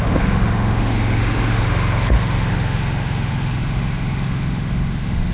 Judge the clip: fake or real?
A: fake